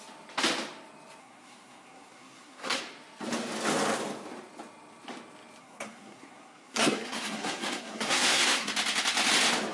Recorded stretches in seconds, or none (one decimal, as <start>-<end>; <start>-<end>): 0.0-1.2; 2.8-5.6; 8.7-9.7